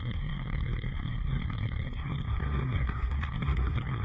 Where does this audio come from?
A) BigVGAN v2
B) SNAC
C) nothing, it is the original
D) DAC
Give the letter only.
B